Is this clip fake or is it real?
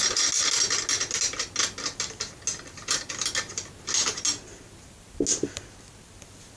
real